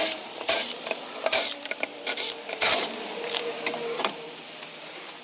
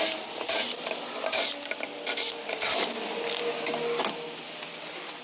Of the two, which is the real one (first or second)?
second